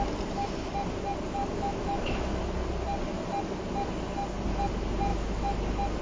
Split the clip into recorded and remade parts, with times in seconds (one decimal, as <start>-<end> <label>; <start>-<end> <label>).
0.0-1.4 recorded; 1.4-2.4 remade; 2.4-5.1 recorded; 5.1-5.6 remade; 5.6-6.0 recorded